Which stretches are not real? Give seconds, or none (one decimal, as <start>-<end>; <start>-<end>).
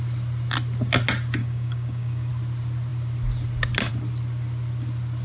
1.4-2.3